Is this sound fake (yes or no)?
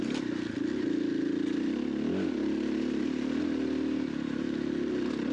no